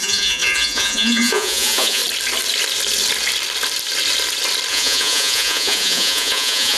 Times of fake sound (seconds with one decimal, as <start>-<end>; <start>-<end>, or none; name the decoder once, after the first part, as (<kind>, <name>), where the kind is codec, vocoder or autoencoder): 0.0-2.0 (vocoder, Vocos); 4.7-6.8